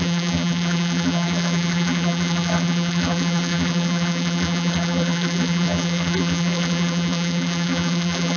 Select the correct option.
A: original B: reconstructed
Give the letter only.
B